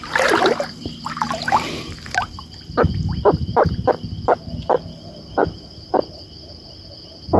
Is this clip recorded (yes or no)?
yes